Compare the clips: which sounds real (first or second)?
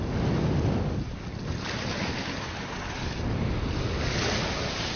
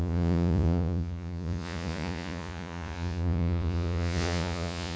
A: first